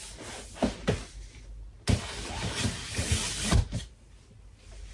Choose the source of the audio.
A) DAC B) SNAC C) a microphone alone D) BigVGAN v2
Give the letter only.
C